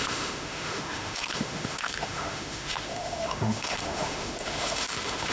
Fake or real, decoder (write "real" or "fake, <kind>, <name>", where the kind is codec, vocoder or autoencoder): fake, autoencoder, DAC-VAE